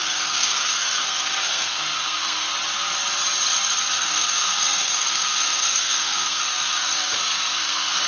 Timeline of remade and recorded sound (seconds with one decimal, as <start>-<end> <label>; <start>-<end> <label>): 0.0-2.5 remade; 2.5-3.9 recorded; 3.9-8.1 remade